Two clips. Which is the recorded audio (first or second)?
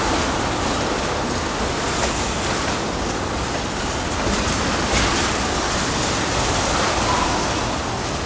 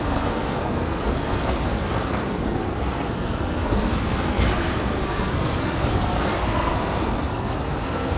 first